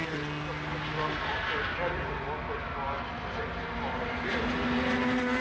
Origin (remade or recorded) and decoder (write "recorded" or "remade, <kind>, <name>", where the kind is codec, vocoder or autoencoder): recorded